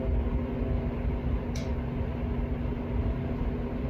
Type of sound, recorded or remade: recorded